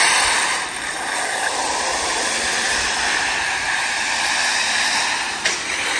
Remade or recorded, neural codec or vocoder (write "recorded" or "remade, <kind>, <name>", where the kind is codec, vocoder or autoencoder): recorded